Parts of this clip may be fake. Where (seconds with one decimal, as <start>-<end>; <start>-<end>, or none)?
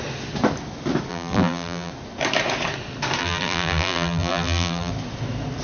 1.1-1.9; 3.2-4.9